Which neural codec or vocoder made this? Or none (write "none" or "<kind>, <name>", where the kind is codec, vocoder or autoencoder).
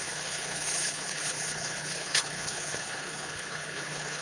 codec, HILCodec